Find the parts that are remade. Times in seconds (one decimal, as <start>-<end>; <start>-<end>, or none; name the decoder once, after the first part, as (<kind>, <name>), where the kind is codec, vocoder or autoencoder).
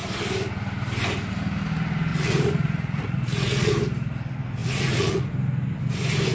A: 2.1-3.7 (vocoder, Vocos); 4.6-5.2